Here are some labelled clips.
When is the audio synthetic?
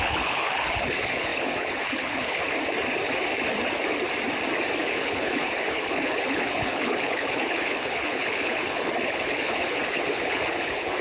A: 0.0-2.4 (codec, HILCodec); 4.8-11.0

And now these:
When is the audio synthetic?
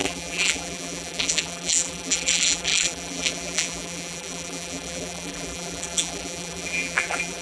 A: 0.0-7.4 (vocoder, BigVGAN v2)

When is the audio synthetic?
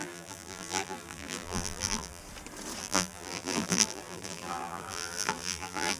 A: 0.0-2.2 (vocoder, BigVGAN v2); 2.8-6.0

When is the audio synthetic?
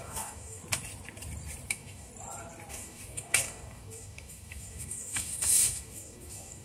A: 0.0-0.6 (codec, DAC); 1.7-2.1; 2.7-6.6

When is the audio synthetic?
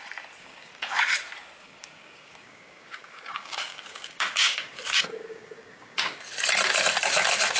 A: 0.4-1.0 (codec, DAC); 1.6-6.2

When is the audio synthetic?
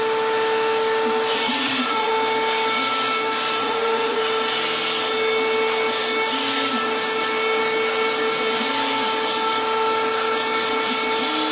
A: 1.3-2.1 (vocoder, Vocos); 3.6-4.2